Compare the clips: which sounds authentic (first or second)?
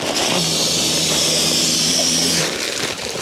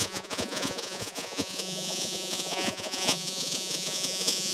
first